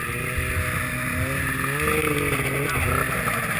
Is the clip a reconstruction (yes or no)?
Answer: no